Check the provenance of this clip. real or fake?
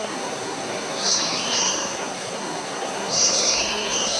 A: fake